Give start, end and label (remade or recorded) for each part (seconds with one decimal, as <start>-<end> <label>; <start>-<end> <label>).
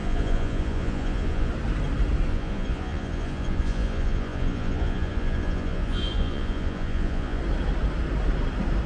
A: 0.0-1.5 remade; 1.5-2.3 recorded; 2.3-7.4 remade; 7.4-8.9 recorded